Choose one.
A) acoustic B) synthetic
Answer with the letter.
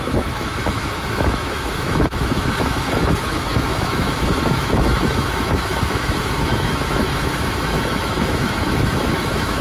B